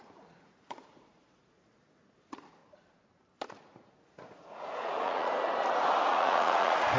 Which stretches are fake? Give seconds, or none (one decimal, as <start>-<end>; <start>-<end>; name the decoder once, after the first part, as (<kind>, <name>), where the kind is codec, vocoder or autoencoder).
0.0-2.6 (vocoder, Vocos); 3.8-5.3; 6.1-7.0